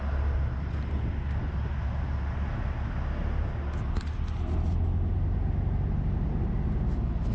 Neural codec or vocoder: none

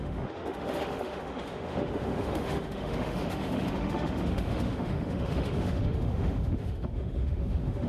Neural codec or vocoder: autoencoder, DAC-VAE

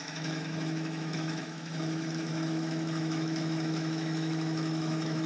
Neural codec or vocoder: autoencoder, DAC-VAE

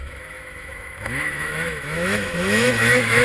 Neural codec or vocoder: autoencoder, DAC-VAE